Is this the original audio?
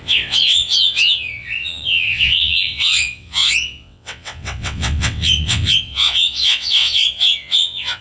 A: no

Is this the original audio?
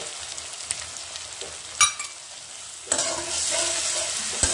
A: yes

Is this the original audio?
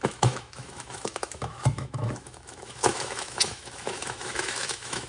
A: no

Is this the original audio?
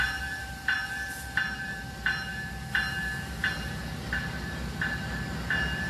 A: no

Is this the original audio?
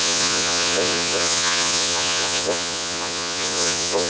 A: no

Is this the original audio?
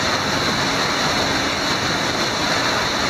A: yes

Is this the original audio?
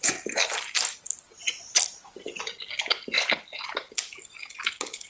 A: yes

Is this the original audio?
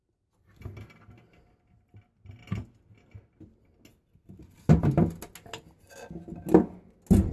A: yes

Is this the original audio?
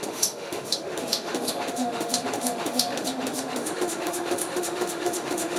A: no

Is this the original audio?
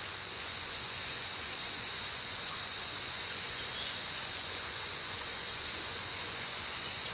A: no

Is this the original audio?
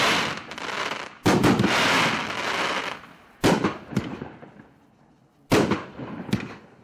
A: yes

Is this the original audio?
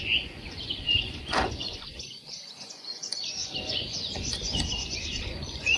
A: no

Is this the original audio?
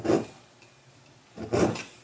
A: yes